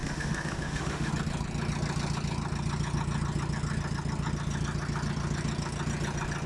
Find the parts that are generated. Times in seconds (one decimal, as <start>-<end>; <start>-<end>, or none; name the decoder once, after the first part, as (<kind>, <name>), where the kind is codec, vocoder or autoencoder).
0.0-1.1 (autoencoder, DAC-VAE)